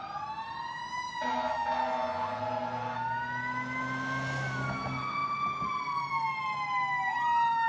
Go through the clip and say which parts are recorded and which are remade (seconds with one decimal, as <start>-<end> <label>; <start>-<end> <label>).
0.0-7.7 recorded